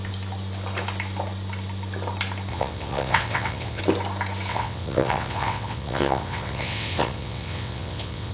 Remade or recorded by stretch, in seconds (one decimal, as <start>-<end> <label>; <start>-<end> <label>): 0.0-2.5 recorded; 2.5-3.8 remade; 3.8-4.5 recorded; 4.5-8.3 remade